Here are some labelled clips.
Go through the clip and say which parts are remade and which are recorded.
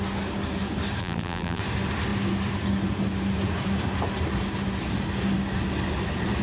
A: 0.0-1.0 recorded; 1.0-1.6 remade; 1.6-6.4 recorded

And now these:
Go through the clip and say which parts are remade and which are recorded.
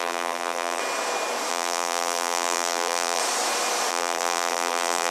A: 0.0-0.8 remade; 0.8-1.5 recorded; 1.5-3.2 remade; 3.2-3.9 recorded; 3.9-5.1 remade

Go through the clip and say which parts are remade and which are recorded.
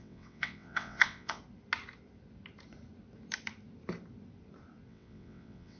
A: 0.0-1.4 remade; 1.4-4.9 recorded; 4.9-5.8 remade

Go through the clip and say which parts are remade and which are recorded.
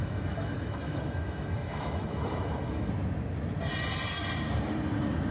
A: 0.0-2.9 remade; 2.9-5.3 recorded